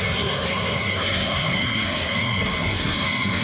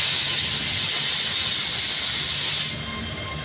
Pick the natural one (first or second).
second